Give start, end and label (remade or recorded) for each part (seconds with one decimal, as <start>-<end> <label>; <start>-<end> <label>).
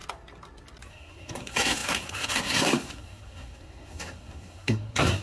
0.0-0.9 recorded; 0.9-5.2 remade